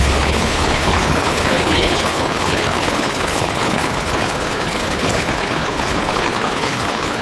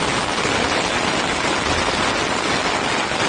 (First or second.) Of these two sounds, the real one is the second